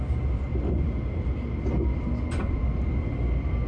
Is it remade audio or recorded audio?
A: recorded